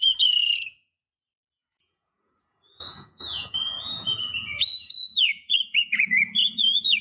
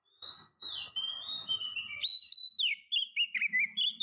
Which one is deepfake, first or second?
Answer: first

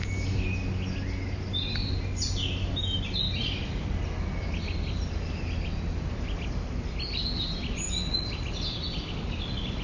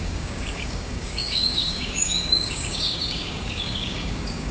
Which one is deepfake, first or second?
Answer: second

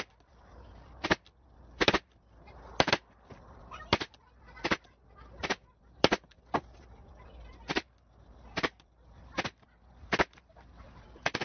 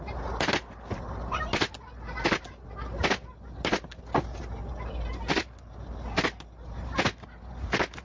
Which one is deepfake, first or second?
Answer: first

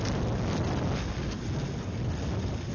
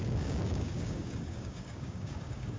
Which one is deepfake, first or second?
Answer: second